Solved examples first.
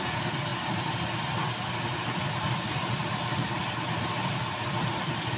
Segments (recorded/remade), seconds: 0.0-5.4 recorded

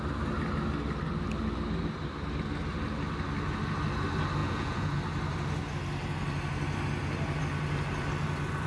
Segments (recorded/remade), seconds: 0.0-4.4 recorded; 4.4-5.0 remade; 5.0-8.7 recorded

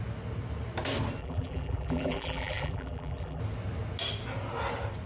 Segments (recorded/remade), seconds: 0.0-1.2 recorded; 1.2-3.4 remade; 3.4-5.1 recorded

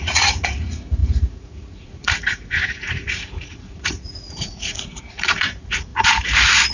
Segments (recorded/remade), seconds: 0.0-5.9 remade; 5.9-6.7 recorded